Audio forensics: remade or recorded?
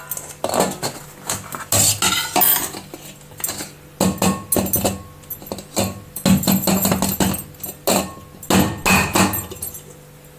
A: recorded